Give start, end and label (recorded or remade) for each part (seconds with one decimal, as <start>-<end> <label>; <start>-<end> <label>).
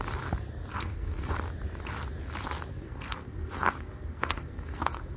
0.0-0.7 recorded; 0.7-1.3 remade; 1.3-2.7 recorded; 2.7-5.2 remade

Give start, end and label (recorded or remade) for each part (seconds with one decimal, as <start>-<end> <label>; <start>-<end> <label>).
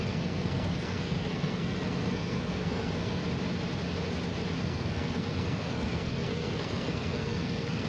0.0-3.2 remade; 3.2-4.6 recorded; 4.6-7.9 remade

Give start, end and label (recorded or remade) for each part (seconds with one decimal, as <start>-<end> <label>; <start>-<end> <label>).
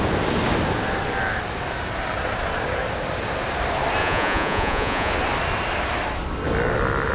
0.0-4.0 recorded; 4.0-5.1 remade; 5.1-7.1 recorded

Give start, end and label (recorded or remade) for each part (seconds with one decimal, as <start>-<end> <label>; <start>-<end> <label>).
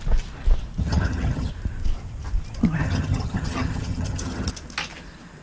0.0-0.8 recorded; 0.8-1.5 remade; 1.5-2.8 recorded; 2.8-4.5 remade; 4.5-5.4 recorded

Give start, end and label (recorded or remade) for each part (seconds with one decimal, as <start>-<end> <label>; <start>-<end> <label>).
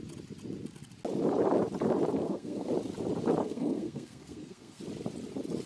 0.0-2.2 recorded; 2.2-2.7 remade; 2.7-3.4 recorded; 3.4-4.8 remade; 4.8-5.7 recorded